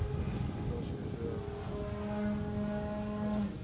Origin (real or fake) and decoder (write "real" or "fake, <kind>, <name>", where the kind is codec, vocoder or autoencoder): real